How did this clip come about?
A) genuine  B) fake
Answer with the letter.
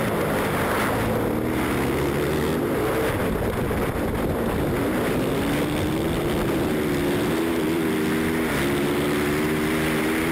A